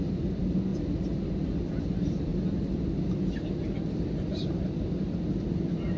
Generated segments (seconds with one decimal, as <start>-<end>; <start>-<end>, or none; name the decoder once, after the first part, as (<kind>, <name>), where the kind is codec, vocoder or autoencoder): 0.0-0.7 (vocoder, BigVGAN v2); 1.8-2.3